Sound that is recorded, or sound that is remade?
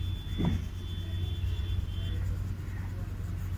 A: recorded